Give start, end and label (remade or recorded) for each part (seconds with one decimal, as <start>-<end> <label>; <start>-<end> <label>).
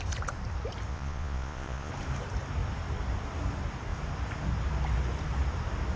0.0-0.9 recorded; 0.9-1.9 remade; 1.9-6.0 recorded